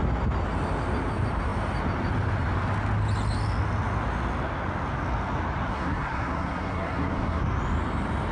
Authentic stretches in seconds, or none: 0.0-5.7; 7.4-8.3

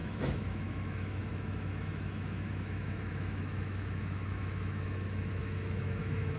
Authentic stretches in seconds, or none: none

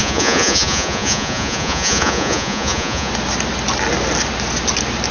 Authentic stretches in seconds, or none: 3.1-5.1

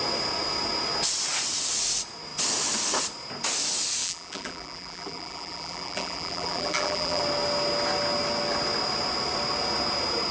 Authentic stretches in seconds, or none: 0.0-4.0; 7.2-10.3